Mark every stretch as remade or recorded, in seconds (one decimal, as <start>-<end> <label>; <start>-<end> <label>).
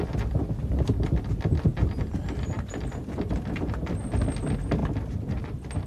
0.0-1.7 recorded; 1.7-3.6 remade; 3.6-4.8 recorded; 4.8-5.4 remade; 5.4-5.9 recorded